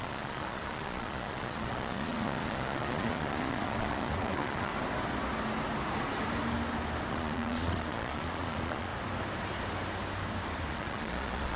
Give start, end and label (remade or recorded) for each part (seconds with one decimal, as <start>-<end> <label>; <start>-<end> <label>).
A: 0.0-4.7 remade; 4.7-7.1 recorded; 7.1-8.9 remade; 8.9-10.7 recorded; 10.7-11.6 remade